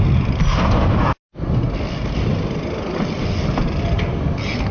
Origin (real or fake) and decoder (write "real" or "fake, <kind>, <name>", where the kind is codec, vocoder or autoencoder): real